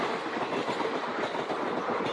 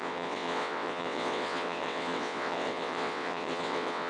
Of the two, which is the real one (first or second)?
first